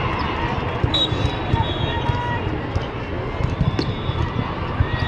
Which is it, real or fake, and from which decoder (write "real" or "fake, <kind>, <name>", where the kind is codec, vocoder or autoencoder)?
real